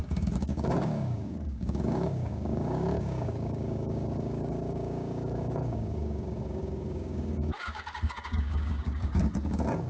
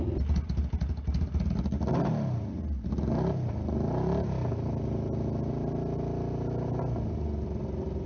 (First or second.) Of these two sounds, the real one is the second